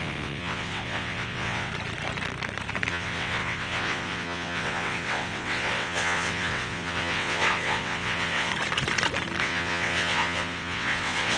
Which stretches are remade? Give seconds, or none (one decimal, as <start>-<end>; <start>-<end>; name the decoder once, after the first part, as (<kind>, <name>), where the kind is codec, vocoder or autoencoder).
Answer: 0.0-1.7 (vocoder, WaveNeXt); 2.9-8.5; 9.4-11.4